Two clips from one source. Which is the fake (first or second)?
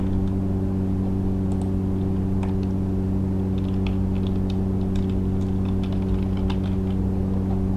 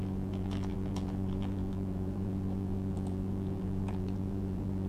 second